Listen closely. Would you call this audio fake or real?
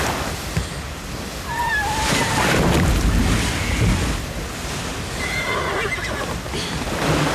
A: real